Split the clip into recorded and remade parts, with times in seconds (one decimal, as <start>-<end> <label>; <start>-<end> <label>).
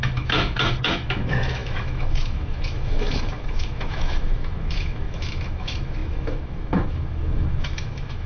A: 0.0-8.3 remade